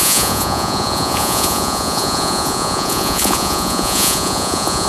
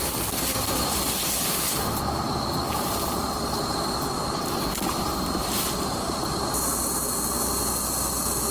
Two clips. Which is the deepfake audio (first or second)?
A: first